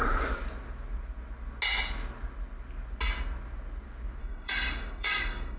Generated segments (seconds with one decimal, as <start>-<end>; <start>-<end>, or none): 4.2-5.6